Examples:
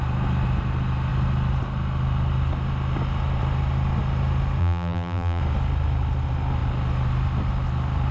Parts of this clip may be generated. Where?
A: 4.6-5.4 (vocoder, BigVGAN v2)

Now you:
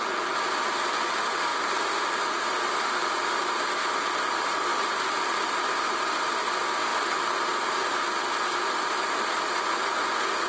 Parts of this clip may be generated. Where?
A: 4.7-5.5 (vocoder, BigVGAN v2)

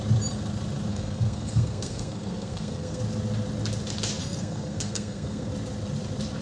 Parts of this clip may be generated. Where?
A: 0.9-3.0 (codec, SNAC); 4.2-5.5

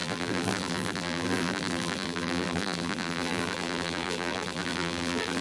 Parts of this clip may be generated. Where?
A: 0.0-5.4 (vocoder, BigVGAN v2)